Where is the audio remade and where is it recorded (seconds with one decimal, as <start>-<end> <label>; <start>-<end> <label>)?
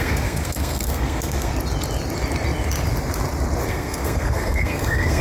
0.0-1.5 remade; 1.5-3.7 recorded; 3.7-5.2 remade